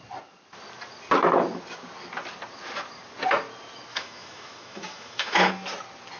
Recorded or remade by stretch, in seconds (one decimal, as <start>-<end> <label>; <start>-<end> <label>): 0.0-3.9 recorded; 3.9-5.5 remade; 5.5-6.2 recorded